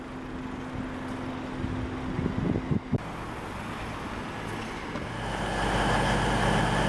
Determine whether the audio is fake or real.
real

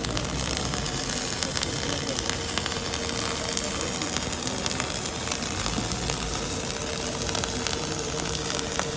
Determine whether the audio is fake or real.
real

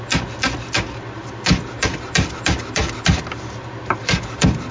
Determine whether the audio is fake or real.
real